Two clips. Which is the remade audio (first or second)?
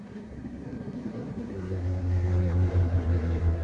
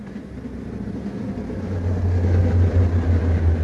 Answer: first